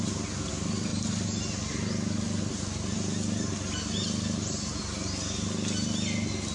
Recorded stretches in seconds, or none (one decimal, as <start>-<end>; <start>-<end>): 0.0-6.5